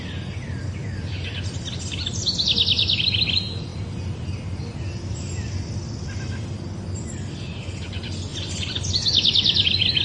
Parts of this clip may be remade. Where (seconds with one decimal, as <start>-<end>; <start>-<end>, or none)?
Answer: 8.3-8.9